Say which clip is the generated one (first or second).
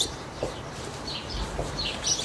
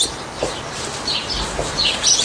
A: first